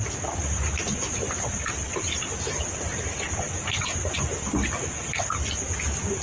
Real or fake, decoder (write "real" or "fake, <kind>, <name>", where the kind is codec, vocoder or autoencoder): real